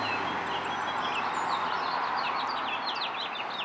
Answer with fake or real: real